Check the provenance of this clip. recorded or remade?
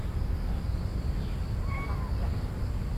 recorded